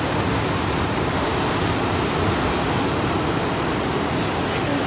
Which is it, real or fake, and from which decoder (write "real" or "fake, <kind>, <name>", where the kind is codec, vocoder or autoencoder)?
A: real